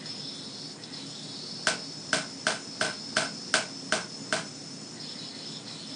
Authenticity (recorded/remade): recorded